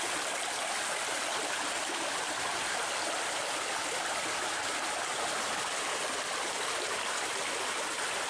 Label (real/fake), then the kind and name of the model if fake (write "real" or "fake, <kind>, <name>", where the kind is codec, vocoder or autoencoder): real